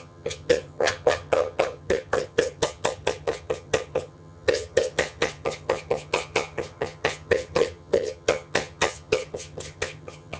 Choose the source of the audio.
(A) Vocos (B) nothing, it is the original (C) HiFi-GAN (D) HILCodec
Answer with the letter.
C